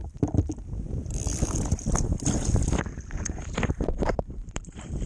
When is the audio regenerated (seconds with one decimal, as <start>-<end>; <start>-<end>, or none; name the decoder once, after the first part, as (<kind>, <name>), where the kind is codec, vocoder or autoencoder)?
3.1-5.1 (vocoder, BigVGAN v2)